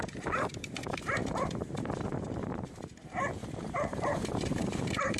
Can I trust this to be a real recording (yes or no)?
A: no